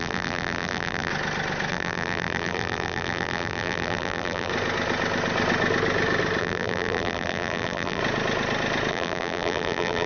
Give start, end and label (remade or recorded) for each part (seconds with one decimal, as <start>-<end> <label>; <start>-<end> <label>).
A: 0.0-1.1 remade; 1.1-1.7 recorded; 1.7-4.5 remade; 4.5-6.4 recorded; 6.4-8.0 remade; 8.0-8.9 recorded; 8.9-10.1 remade